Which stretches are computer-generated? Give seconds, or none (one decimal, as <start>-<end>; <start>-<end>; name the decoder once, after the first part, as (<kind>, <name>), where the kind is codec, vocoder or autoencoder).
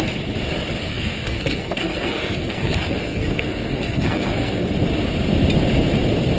0.9-4.7 (codec, SNAC)